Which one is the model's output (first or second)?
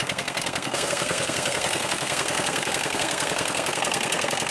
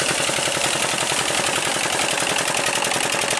first